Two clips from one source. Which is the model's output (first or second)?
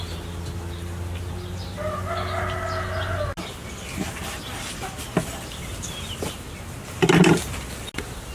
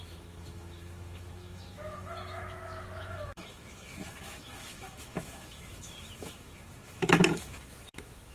second